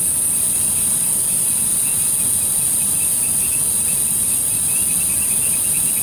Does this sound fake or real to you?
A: real